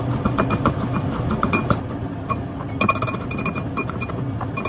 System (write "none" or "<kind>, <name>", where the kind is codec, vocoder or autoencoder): none